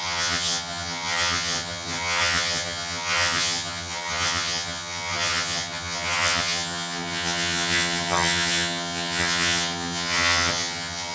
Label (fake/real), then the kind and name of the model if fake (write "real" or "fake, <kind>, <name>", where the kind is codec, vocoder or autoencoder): fake, vocoder, HiFi-GAN